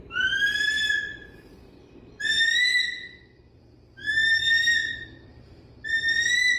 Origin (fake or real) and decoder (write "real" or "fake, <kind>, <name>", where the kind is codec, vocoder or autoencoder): fake, vocoder, BigVGAN v2